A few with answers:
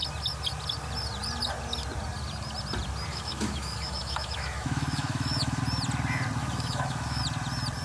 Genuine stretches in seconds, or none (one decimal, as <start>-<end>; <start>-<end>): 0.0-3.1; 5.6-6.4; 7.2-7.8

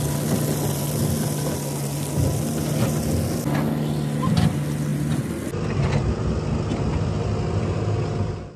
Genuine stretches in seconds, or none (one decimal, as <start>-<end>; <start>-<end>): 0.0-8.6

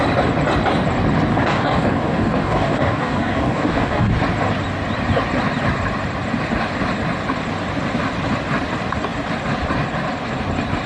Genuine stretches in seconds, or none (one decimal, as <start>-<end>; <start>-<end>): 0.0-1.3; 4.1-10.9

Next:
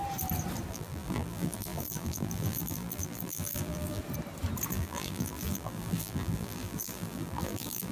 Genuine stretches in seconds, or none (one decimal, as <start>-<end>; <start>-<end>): 0.0-0.7; 4.0-4.7

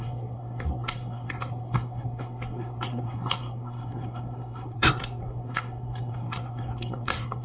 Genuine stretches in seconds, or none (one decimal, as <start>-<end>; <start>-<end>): none

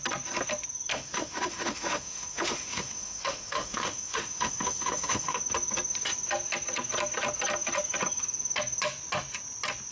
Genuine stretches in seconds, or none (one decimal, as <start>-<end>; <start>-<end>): 0.0-0.9; 5.4-9.9